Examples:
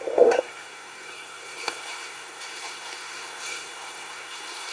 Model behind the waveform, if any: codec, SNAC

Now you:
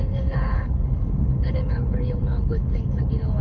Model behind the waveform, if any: codec, HILCodec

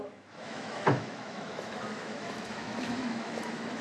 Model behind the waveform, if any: autoencoder, DAC-VAE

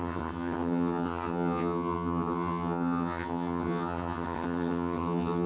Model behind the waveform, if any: vocoder, HiFi-GAN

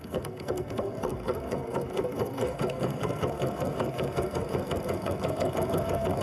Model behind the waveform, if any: codec, SNAC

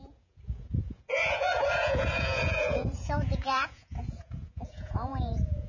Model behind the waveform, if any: vocoder, Vocos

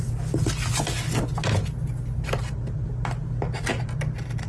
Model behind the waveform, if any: none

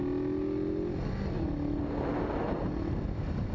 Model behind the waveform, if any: none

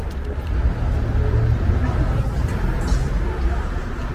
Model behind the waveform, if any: none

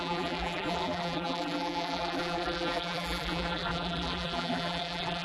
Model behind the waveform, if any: vocoder, BigVGAN v2